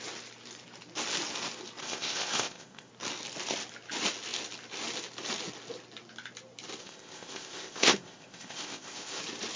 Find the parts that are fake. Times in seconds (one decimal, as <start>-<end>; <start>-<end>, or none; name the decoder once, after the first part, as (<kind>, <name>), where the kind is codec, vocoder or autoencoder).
1.8-2.9 (codec, ZipCodec); 6.8-9.2